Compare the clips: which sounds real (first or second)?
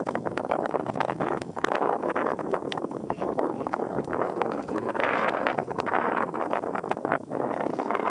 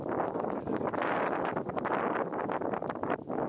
second